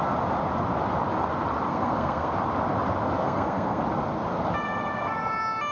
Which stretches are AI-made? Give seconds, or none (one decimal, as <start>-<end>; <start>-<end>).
1.7-2.3; 3.2-3.8